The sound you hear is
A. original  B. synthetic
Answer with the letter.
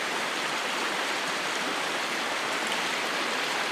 A